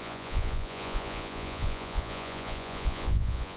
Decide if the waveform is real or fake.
fake